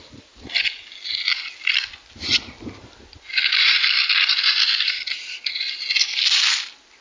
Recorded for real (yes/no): yes